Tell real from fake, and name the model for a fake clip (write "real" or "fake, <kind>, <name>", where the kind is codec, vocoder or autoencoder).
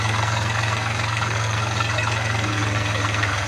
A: fake, codec, SNAC